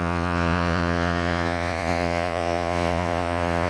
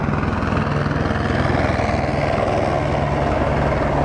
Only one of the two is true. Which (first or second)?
second